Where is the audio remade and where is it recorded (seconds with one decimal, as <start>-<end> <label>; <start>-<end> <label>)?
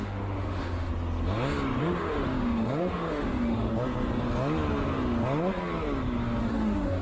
0.0-0.9 remade; 0.9-1.8 recorded; 1.8-3.7 remade; 3.7-6.4 recorded; 6.4-7.0 remade